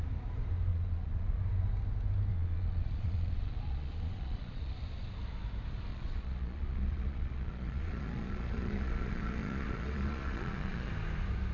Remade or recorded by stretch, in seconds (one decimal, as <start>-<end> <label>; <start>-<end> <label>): 0.0-0.7 recorded; 0.7-1.4 remade; 1.4-2.3 recorded; 2.3-4.7 remade; 4.7-5.9 recorded; 5.9-10.9 remade; 10.9-11.5 recorded